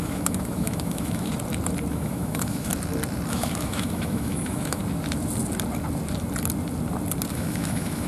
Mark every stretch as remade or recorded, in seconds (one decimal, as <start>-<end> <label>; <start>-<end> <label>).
0.0-1.3 remade; 1.3-1.9 recorded; 1.9-2.7 remade; 2.7-3.3 recorded; 3.3-4.8 remade; 4.8-7.3 recorded; 7.3-8.1 remade